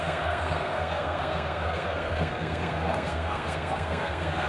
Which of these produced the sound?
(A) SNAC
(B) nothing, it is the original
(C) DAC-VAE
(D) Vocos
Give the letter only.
A